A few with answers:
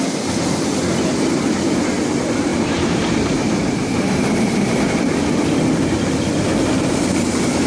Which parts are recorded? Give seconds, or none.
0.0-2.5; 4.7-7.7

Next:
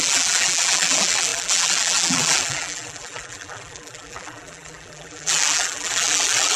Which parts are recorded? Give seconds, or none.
none